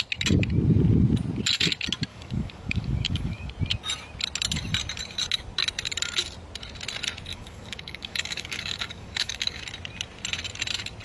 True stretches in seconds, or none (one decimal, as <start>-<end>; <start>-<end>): 0.0-2.1; 3.5-7.3; 9.6-11.0